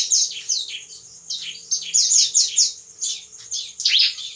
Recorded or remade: recorded